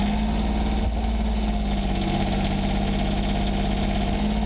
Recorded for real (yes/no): yes